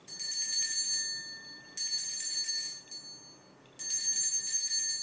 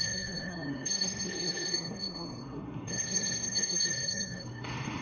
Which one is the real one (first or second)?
first